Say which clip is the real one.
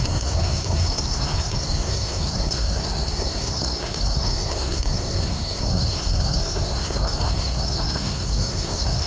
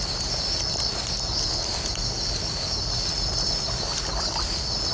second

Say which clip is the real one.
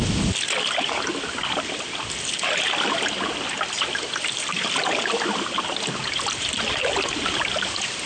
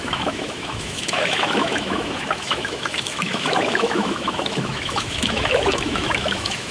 first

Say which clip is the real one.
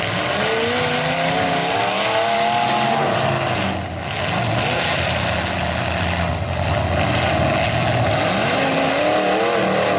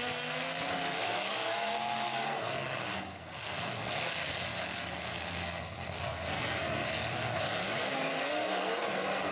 first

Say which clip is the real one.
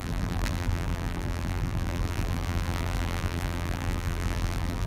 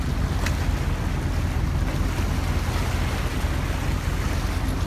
second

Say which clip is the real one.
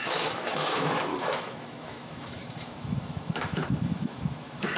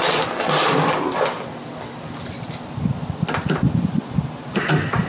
second